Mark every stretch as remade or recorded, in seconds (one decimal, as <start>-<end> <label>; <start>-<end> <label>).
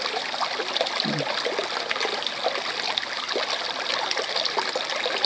0.0-5.3 recorded